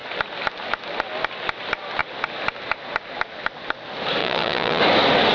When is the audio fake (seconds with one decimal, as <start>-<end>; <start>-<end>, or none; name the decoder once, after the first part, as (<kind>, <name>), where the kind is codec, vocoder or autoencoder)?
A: 4.2-4.8 (vocoder, Vocos)